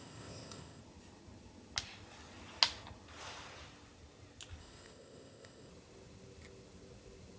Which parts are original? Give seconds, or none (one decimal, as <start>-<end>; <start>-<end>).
0.8-4.6; 5.7-7.4